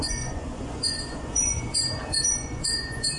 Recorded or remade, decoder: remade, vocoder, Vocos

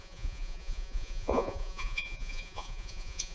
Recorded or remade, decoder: remade, vocoder, Vocos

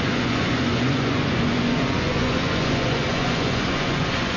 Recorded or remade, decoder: remade, vocoder, Vocos